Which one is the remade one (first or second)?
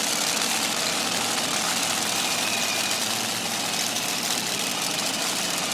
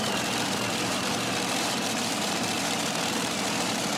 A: second